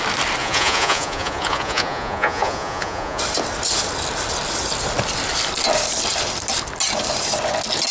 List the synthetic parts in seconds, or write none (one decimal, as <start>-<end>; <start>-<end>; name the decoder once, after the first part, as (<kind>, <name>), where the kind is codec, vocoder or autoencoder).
0.4-3.2 (vocoder, Vocos)